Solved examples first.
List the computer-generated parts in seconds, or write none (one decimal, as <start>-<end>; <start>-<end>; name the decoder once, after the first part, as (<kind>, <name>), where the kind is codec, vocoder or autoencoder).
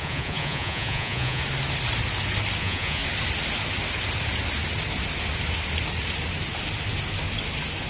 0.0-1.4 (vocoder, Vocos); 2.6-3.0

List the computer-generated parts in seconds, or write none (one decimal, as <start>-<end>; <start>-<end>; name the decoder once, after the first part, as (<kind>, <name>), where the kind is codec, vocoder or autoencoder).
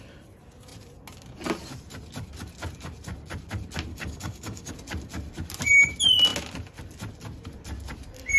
3.9-4.7 (codec, DAC)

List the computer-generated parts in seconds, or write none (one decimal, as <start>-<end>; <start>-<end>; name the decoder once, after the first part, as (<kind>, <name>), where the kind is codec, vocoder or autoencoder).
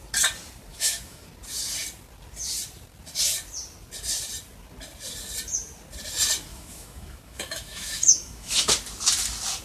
0.7-1.3 (autoencoder, DAC-VAE); 6.5-8.7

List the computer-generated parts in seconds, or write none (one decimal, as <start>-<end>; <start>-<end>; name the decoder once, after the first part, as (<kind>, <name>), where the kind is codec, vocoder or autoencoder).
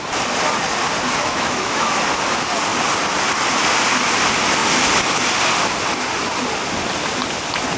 1.2-1.9 (autoencoder, DAC-VAE)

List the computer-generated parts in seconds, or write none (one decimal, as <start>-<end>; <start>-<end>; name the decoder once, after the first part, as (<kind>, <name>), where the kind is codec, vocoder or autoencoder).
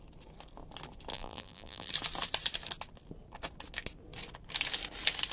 1.1-1.9 (vocoder, BigVGAN v2)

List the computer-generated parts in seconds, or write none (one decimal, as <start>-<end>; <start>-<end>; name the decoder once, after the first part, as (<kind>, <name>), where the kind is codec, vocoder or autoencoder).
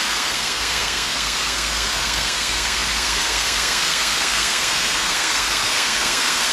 0.0-6.5 (codec, SNAC)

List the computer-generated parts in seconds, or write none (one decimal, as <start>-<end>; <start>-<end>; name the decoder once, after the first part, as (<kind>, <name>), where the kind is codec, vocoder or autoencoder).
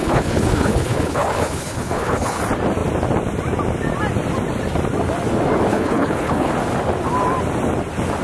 0.0-2.4 (codec, HILCodec); 5.7-6.5